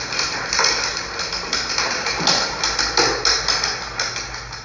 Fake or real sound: real